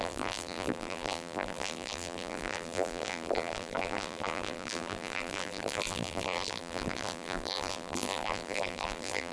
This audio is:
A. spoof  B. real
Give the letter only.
A